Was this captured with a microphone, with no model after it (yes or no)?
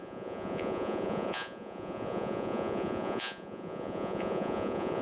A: no